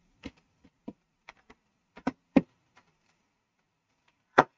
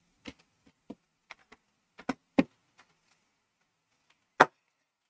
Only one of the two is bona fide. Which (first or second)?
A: second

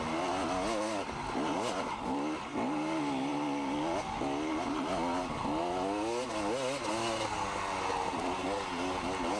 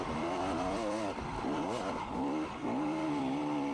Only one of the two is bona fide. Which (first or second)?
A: first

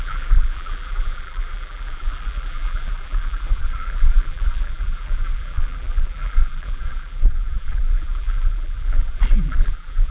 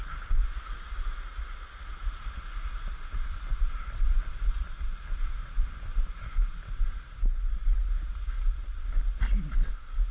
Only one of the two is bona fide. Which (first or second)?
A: second